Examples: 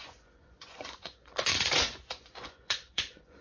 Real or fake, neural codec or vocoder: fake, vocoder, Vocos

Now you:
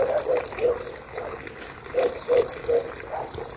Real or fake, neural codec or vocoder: real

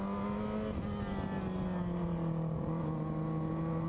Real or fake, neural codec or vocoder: real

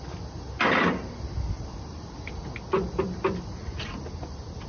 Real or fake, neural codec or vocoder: real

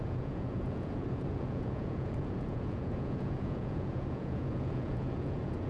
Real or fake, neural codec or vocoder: fake, vocoder, Vocos